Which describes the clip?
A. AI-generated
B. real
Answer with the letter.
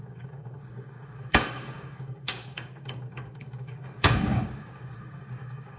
A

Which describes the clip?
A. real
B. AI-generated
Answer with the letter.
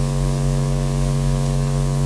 B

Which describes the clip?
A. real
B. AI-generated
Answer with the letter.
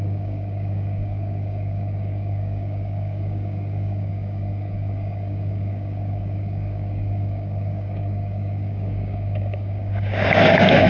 B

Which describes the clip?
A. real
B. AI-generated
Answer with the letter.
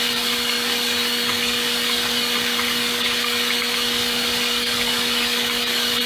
B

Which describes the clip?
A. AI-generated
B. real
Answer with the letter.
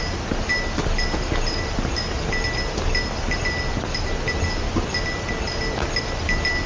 B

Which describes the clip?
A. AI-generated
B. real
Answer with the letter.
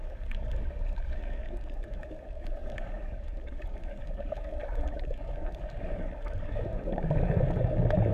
A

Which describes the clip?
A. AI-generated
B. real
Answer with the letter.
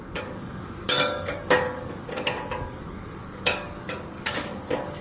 A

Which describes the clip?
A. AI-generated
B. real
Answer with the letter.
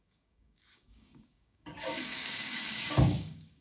A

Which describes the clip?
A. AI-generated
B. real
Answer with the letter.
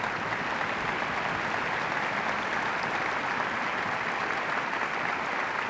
B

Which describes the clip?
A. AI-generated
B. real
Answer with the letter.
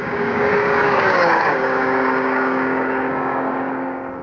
A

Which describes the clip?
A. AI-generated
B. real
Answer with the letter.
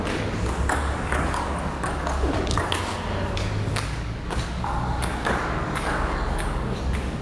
A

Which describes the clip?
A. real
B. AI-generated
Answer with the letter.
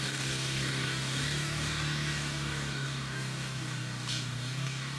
B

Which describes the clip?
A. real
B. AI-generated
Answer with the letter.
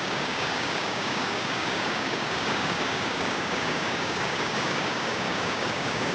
B